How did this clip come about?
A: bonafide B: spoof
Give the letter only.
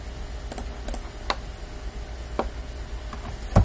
A